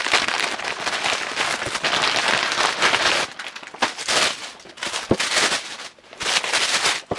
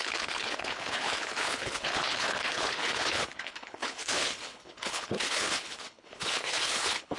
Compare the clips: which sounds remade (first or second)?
second